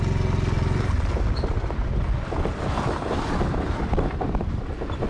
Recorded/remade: recorded